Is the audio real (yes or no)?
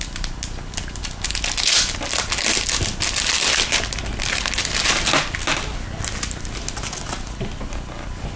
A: yes